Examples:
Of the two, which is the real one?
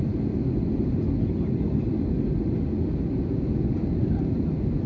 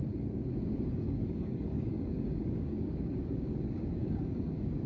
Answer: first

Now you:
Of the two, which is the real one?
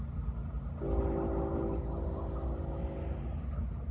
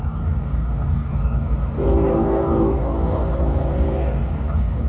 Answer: first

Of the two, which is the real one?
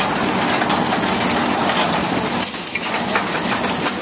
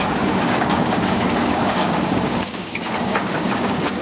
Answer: first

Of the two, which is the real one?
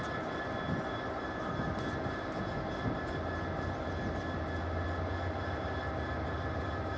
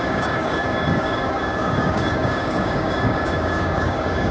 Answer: first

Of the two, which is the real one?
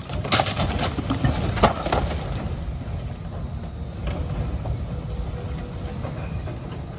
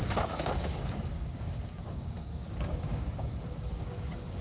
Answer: first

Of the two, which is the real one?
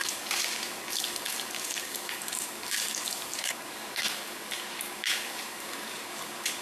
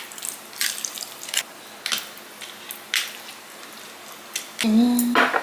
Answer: second